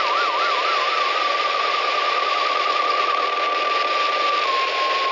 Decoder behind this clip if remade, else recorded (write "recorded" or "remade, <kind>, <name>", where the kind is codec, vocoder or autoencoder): recorded